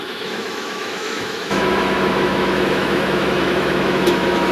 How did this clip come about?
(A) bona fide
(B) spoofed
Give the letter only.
B